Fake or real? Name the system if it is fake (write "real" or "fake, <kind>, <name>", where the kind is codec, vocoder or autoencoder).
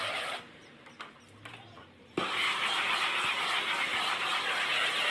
fake, vocoder, BigVGAN v2